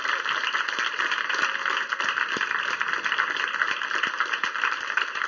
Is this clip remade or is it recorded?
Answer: recorded